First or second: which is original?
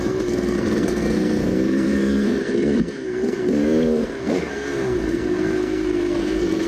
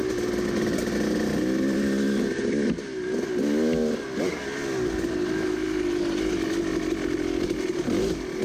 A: second